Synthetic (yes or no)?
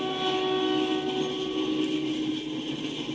no